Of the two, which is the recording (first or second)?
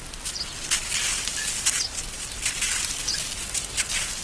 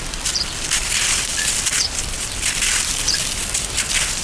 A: first